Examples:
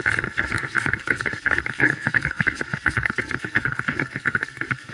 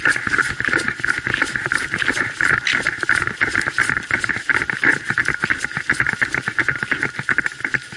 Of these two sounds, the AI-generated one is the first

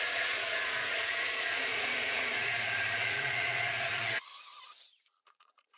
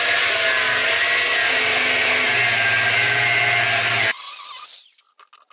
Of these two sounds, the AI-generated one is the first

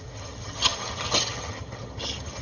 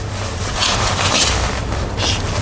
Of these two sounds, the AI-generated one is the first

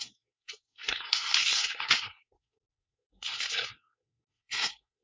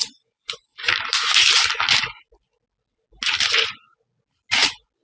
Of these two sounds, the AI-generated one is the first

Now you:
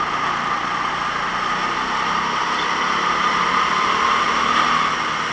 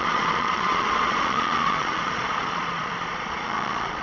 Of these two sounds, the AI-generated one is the second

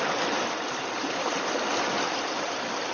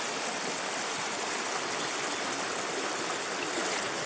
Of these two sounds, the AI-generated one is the first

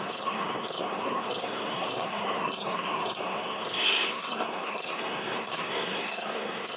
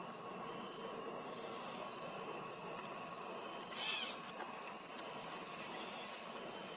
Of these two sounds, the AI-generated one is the first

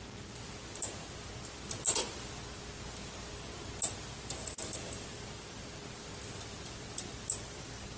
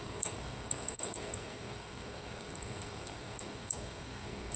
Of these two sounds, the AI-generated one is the second